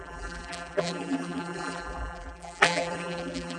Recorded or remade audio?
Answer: remade